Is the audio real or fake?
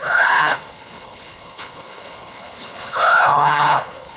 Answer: fake